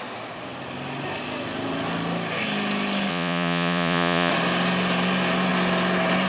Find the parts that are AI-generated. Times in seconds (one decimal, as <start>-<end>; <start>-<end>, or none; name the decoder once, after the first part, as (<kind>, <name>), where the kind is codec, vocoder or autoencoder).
3.1-4.3 (vocoder, Vocos)